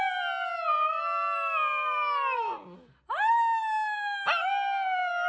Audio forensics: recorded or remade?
recorded